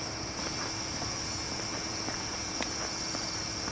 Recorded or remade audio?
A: recorded